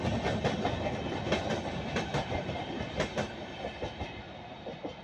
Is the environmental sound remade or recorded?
recorded